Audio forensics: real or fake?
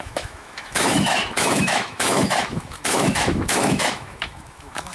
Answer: fake